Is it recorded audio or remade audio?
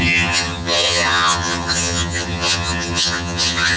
remade